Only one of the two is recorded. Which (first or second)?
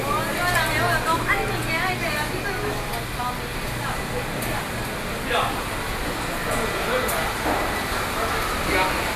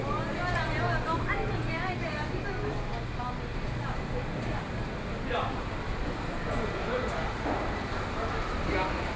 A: first